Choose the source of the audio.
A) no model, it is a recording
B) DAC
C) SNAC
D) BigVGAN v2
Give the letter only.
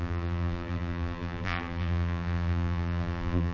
D